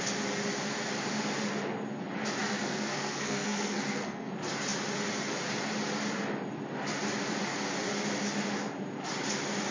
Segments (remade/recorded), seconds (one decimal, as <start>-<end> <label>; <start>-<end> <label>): 0.0-2.4 recorded; 2.4-4.3 remade; 4.3-9.7 recorded